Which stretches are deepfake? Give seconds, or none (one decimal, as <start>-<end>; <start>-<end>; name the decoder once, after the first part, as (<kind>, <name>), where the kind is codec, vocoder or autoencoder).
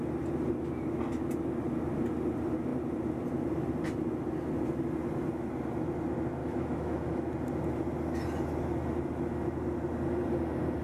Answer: 6.4-7.3 (autoencoder, DAC-VAE)